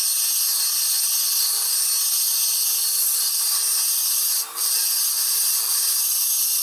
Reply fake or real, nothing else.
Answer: real